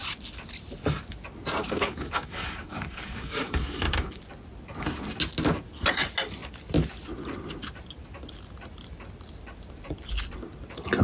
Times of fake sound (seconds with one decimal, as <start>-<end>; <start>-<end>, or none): 1.6-4.2